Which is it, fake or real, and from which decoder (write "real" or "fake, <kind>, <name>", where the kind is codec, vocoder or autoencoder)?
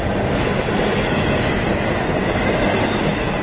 real